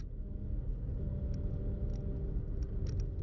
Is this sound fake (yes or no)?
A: no